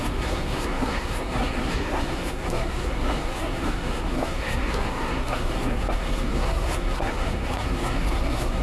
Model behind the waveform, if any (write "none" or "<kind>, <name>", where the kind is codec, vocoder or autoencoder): codec, SNAC